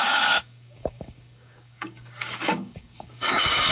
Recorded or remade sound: remade